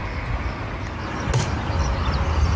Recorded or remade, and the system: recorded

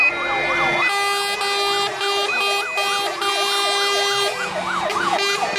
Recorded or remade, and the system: recorded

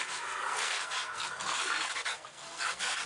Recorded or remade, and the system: remade, codec, SNAC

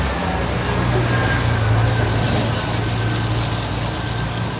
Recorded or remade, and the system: recorded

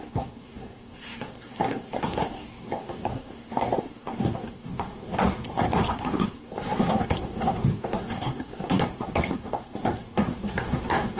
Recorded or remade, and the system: remade, codec, SNAC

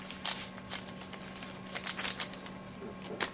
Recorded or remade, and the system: recorded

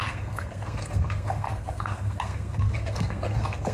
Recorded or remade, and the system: remade, codec, SNAC